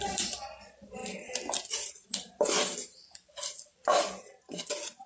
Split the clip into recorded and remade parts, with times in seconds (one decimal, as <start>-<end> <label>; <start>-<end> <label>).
0.0-1.0 remade; 1.0-1.9 recorded; 1.9-3.9 remade; 3.9-5.1 recorded